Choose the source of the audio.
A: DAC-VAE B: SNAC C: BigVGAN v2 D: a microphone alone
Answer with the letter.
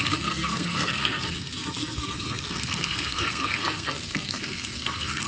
B